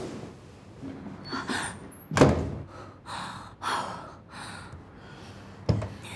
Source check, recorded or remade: recorded